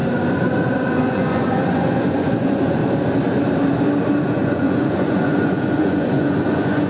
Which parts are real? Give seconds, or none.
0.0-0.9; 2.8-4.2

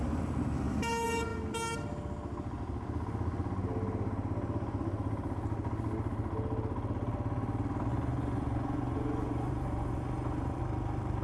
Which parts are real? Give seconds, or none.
0.0-7.9; 10.6-11.2

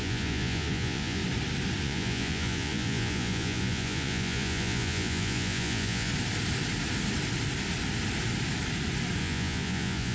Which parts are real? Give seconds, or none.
1.2-1.8; 6.1-9.2

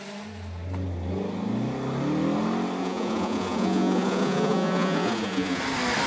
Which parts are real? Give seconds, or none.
0.0-2.8; 5.6-6.1

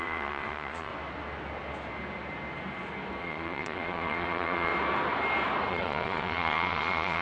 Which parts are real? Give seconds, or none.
0.9-3.2; 4.7-5.7